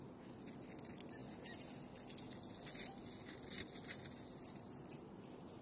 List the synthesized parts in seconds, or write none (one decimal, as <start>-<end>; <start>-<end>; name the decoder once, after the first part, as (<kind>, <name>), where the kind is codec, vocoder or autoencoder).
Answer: none